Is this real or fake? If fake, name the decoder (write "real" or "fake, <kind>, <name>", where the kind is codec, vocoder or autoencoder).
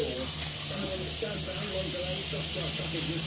real